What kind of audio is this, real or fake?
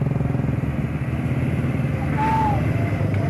real